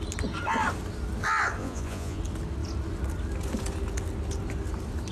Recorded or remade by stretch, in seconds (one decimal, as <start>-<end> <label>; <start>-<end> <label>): 0.0-1.6 recorded; 1.6-2.2 remade; 2.2-5.1 recorded